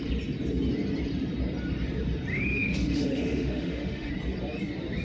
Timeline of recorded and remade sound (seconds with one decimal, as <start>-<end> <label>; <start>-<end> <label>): 0.0-2.3 recorded; 2.3-4.1 remade; 4.1-5.0 recorded

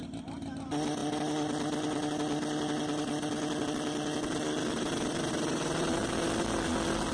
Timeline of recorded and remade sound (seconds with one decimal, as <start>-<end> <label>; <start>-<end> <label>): 0.0-7.1 recorded

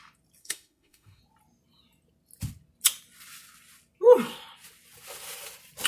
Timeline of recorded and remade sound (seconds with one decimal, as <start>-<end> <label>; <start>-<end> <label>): 0.0-0.4 recorded; 0.4-1.2 remade; 1.2-5.9 recorded